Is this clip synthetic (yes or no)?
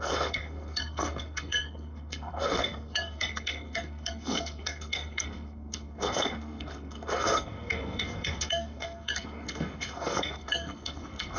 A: yes